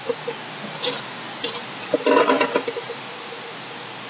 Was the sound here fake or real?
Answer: real